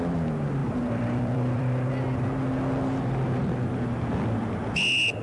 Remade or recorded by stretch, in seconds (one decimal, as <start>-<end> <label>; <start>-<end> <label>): 0.0-0.6 recorded; 0.6-1.9 remade; 1.9-5.2 recorded